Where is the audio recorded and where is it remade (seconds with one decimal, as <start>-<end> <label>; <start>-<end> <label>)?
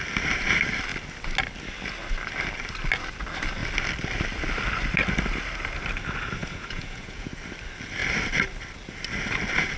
0.0-6.4 recorded; 6.4-7.3 remade; 7.3-9.8 recorded